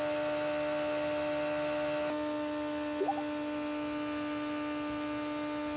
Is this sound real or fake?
real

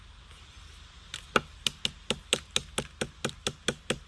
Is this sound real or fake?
real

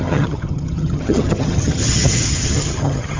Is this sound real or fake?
fake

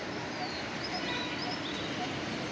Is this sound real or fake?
real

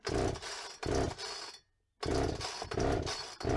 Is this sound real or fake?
real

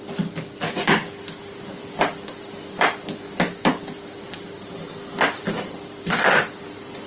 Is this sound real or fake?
real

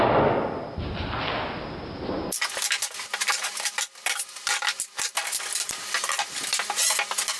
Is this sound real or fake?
real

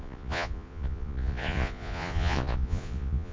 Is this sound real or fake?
fake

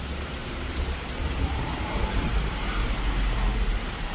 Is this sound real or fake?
fake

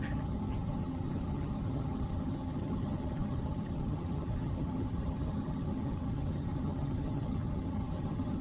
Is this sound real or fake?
fake